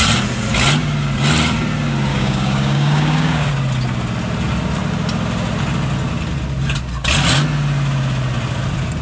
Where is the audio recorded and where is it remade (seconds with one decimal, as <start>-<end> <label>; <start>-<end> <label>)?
0.0-2.1 recorded; 2.1-3.5 remade; 3.5-9.0 recorded

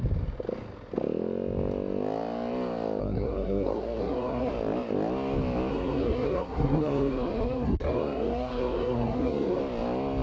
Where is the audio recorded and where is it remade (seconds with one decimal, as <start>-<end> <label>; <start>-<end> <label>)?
0.0-3.0 recorded; 3.0-4.5 remade; 4.5-5.7 recorded; 5.7-9.6 remade; 9.6-10.2 recorded